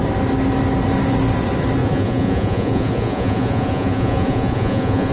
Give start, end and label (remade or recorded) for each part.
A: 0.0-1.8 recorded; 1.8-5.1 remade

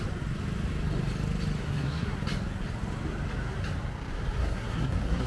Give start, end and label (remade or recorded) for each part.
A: 0.0-1.6 recorded; 1.6-2.2 remade; 2.2-4.4 recorded; 4.4-5.3 remade